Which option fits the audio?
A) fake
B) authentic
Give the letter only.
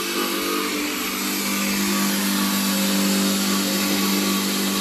B